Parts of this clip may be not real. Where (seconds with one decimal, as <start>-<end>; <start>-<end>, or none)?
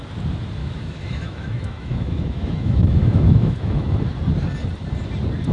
0.6-3.9